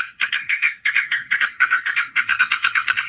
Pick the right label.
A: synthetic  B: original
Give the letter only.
A